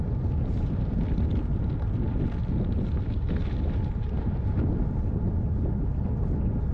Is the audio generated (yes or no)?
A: no